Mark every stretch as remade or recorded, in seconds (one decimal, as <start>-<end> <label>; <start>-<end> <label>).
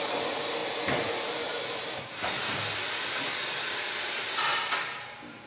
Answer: 0.0-5.5 recorded